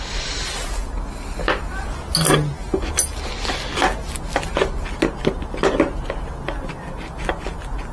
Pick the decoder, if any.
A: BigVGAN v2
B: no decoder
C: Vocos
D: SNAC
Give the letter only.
B